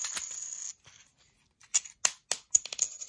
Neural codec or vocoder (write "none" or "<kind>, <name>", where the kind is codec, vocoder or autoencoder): none